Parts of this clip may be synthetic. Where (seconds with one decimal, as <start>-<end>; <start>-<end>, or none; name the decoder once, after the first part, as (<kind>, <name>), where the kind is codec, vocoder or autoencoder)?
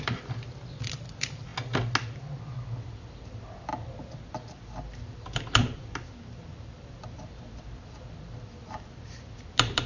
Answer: 0.0-1.5 (vocoder, BigVGAN v2); 2.6-3.7; 4.5-9.9